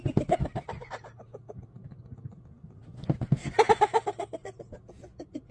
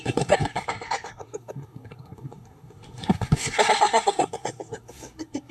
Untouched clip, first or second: first